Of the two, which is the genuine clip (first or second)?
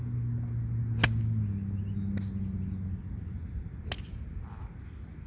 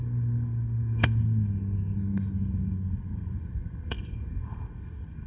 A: first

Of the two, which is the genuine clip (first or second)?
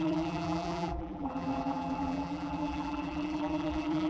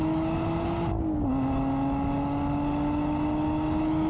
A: second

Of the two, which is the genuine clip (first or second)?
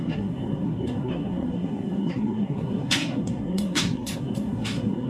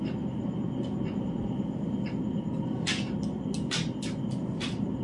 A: second